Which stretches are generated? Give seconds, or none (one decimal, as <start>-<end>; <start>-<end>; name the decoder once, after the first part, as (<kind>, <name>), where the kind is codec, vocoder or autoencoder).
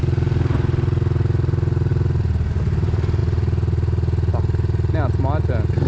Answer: none